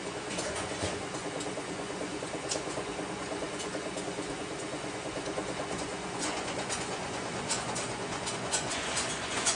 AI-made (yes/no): yes